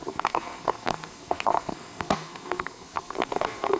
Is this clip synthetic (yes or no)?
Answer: yes